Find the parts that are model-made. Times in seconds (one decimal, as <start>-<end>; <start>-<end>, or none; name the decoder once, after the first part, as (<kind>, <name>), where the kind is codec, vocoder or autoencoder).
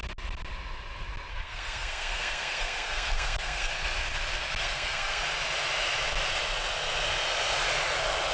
1.3-3.7 (codec, SNAC); 4.6-5.2